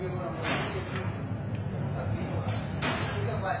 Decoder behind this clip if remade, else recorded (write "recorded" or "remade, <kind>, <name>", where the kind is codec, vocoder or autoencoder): recorded